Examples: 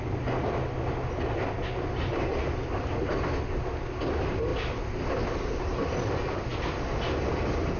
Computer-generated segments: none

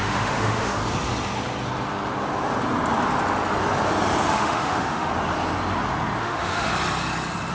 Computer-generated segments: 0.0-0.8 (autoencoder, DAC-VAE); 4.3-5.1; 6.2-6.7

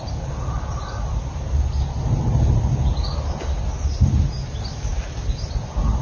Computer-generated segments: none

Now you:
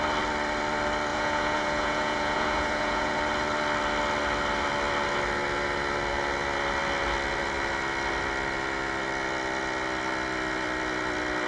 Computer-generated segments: 1.1-3.2 (vocoder, Vocos)